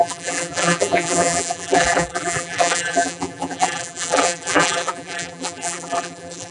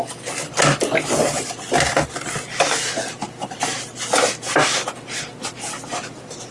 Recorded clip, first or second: second